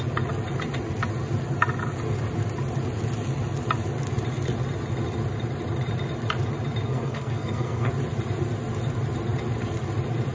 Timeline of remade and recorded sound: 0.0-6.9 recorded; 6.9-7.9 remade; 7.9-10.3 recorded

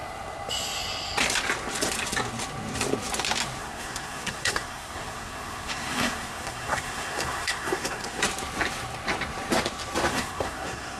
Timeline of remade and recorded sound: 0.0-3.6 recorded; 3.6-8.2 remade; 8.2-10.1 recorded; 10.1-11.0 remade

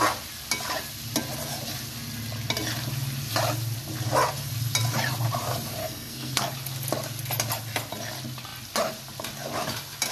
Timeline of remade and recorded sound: 0.0-5.8 recorded; 5.8-6.5 remade; 6.5-10.1 recorded

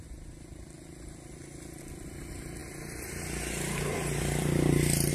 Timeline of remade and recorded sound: 0.0-5.1 recorded